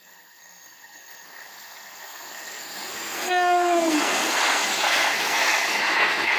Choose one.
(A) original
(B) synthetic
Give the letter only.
B